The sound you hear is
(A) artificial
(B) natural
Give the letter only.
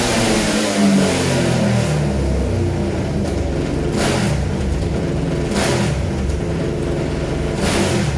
B